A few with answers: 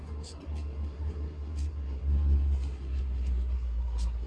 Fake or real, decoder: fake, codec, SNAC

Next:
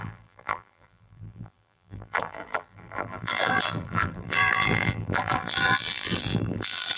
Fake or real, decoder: fake, vocoder, BigVGAN v2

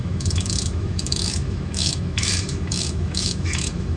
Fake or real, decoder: fake, autoencoder, DAC-VAE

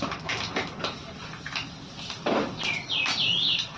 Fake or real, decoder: real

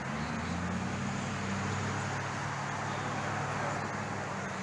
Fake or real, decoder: real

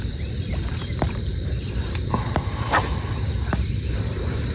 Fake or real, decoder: fake, vocoder, BigVGAN v2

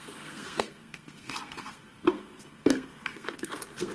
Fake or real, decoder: fake, codec, SNAC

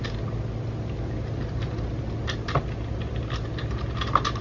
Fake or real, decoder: real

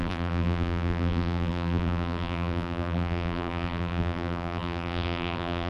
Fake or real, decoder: fake, vocoder, BigVGAN v2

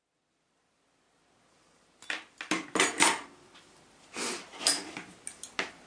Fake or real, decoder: real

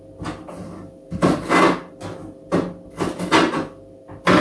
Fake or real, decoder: real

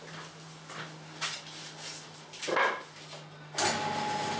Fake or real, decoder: real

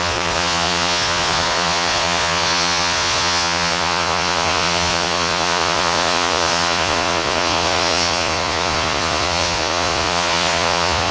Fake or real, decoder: fake, vocoder, Vocos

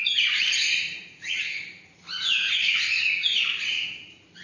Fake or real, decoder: fake, vocoder, Vocos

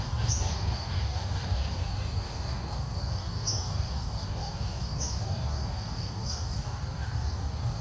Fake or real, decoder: fake, codec, DAC